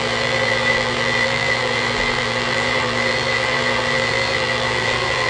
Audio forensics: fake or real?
fake